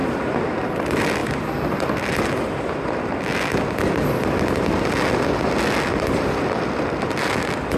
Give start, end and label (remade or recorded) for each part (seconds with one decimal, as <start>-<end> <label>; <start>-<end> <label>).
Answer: 0.0-0.7 remade; 0.7-7.8 recorded